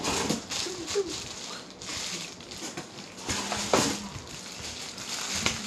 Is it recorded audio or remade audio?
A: recorded